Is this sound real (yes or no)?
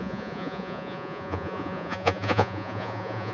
no